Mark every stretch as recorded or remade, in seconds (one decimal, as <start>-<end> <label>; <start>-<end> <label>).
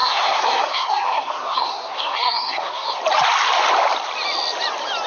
0.0-3.0 remade; 3.0-5.1 recorded